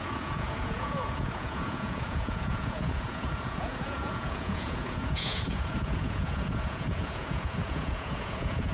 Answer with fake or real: fake